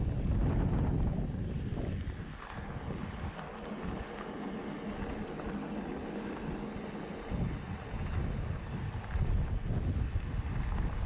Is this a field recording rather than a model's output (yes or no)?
yes